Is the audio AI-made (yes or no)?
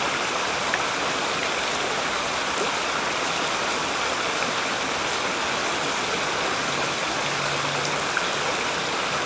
no